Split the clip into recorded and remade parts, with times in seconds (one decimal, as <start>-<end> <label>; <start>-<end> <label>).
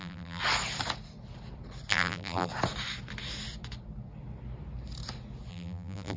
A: 0.0-0.4 remade; 0.4-1.9 recorded; 1.9-2.5 remade; 2.5-5.5 recorded; 5.5-6.2 remade